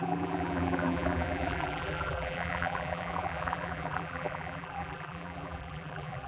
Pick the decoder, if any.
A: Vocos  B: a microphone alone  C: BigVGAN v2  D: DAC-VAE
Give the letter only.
C